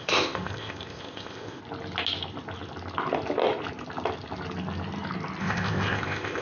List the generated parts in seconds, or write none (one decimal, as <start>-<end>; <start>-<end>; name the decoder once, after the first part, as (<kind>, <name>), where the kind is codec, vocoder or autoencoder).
0.0-1.6 (codec, ZipCodec); 5.4-6.4